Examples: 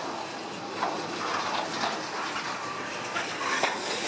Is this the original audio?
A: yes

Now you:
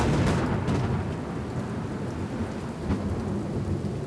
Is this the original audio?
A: yes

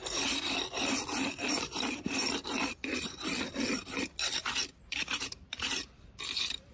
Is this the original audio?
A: no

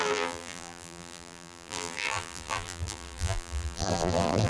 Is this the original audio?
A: no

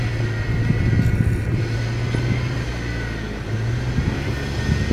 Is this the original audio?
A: yes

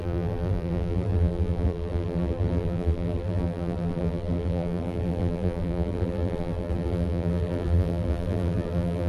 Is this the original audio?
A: no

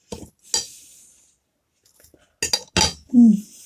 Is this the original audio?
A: yes